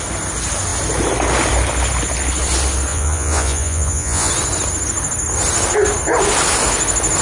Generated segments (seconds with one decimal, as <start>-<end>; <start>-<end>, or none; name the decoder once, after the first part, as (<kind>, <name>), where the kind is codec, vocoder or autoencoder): 2.9-4.3 (vocoder, Vocos)